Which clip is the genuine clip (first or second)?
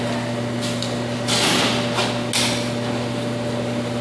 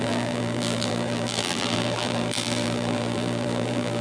first